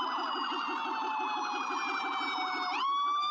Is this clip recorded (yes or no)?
yes